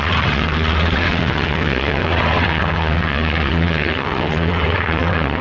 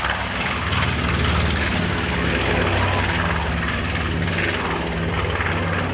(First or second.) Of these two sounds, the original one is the second